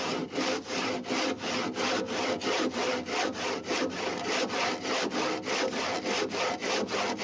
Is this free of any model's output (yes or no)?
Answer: yes